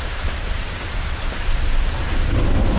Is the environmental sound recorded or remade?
recorded